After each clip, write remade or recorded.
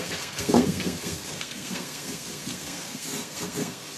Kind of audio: remade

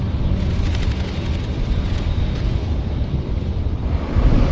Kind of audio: recorded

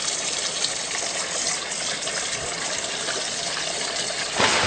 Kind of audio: recorded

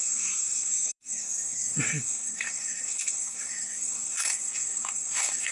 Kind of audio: remade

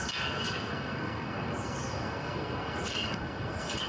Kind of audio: remade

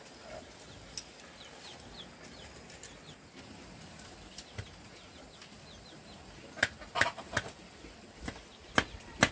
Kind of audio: recorded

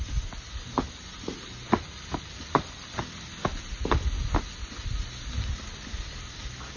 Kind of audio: recorded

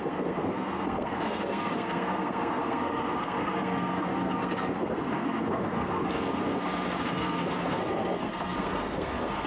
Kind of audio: remade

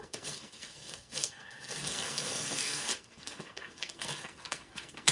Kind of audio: remade